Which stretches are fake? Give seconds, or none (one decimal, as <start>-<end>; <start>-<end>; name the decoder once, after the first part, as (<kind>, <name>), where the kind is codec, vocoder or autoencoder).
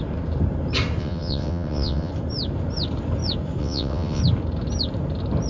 1.0-2.1 (vocoder, WaveNeXt); 3.6-4.2